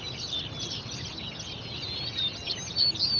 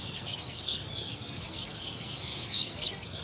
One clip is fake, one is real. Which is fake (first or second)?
second